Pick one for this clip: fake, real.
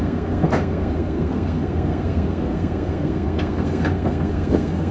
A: fake